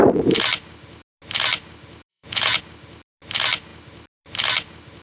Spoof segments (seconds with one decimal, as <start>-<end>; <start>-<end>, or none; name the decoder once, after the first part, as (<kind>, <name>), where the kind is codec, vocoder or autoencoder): 2.1-2.6 (vocoder, Vocos)